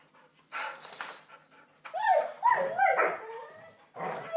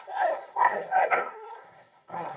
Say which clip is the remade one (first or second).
second